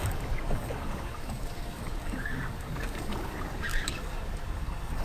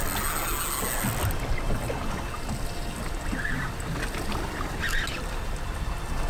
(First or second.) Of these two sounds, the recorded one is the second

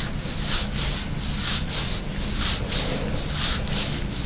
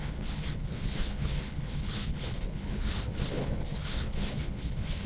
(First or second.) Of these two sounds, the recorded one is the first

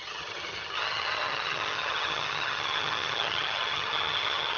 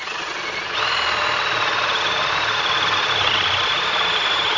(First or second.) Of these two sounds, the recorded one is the second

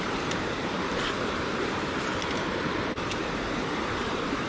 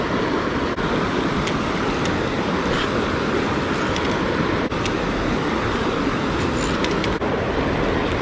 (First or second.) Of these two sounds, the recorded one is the second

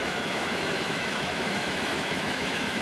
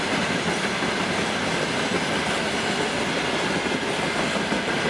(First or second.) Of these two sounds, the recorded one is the second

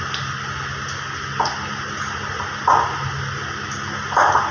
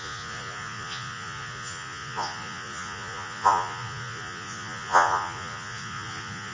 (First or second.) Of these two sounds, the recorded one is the first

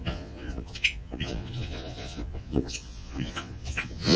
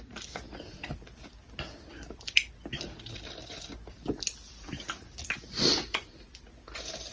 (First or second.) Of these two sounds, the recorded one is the second